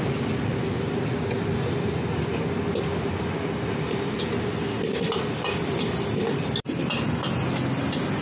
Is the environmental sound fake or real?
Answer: real